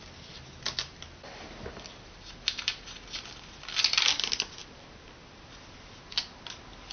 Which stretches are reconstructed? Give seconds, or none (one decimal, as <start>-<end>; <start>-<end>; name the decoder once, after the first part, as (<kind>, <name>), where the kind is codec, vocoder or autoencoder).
none